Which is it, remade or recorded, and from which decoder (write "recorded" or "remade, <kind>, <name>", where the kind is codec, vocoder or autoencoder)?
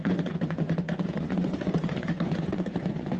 remade, vocoder, Vocos